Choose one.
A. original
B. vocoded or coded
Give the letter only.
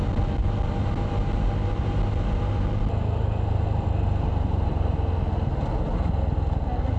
A